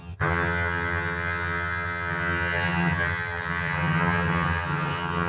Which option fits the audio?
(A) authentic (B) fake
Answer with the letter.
B